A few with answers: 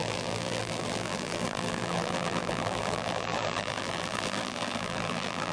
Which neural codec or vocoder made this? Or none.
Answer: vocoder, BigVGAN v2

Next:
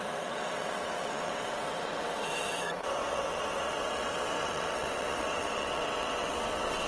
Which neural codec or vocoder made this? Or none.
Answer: vocoder, WaveNeXt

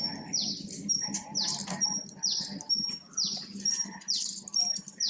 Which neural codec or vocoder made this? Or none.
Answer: none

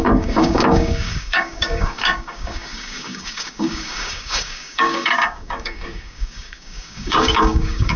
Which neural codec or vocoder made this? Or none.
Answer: codec, DAC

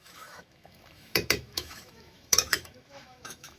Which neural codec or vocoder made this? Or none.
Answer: autoencoder, DAC-VAE